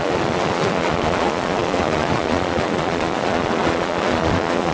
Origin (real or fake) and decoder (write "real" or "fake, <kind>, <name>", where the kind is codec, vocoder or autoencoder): fake, vocoder, Vocos